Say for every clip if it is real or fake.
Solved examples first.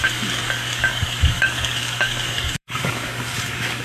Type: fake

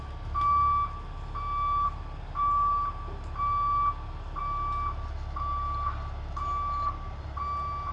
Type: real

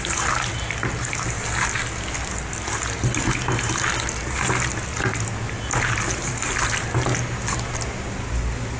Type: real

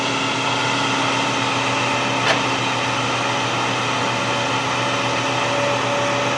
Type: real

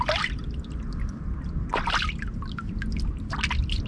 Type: real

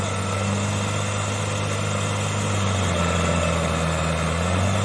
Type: real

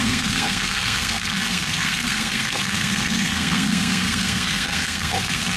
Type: fake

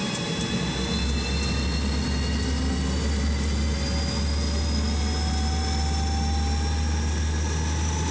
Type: real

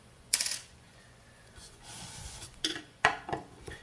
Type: fake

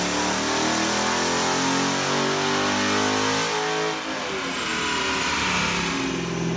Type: real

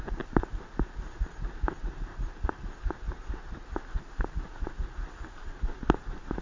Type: real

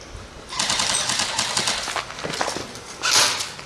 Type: real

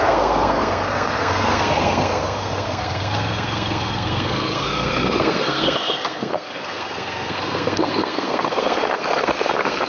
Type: fake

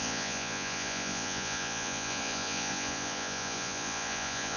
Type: fake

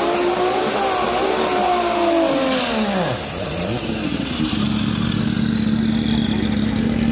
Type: real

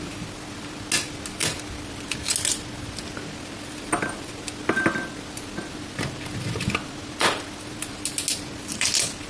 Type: real